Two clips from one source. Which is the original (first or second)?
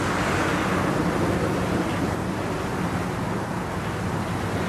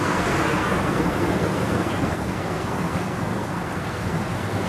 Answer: first